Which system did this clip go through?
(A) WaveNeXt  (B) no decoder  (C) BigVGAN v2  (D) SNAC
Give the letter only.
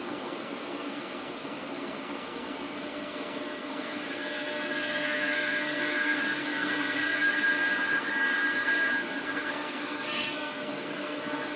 D